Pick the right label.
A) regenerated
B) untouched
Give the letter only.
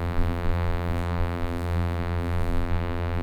A